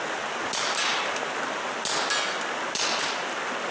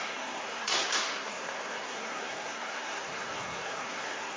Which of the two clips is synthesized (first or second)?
second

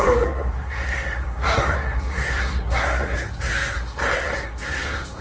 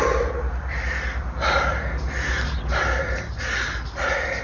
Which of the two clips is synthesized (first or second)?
first